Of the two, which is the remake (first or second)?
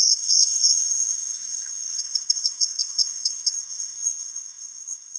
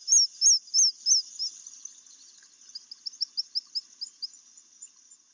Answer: first